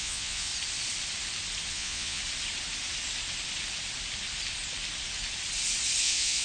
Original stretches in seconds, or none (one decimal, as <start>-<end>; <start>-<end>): 0.5-1.7; 2.2-6.0